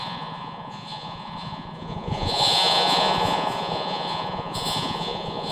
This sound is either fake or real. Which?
fake